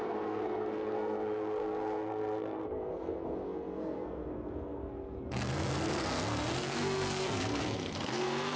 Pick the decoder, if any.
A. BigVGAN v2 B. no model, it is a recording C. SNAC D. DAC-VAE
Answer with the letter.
C